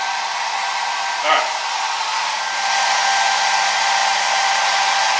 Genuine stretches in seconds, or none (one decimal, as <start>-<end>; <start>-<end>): 0.0-4.0; 4.5-5.2